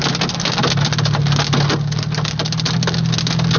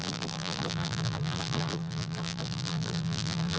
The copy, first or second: second